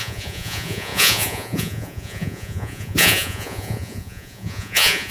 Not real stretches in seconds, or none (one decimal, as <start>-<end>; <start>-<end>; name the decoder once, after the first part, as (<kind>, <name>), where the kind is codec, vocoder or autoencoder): 0.0-5.1 (vocoder, Vocos)